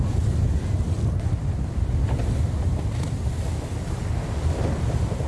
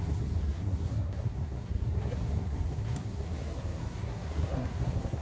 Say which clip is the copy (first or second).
second